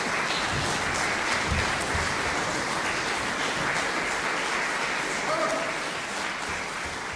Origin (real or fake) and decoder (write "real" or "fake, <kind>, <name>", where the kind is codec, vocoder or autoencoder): real